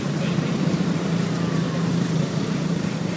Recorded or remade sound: remade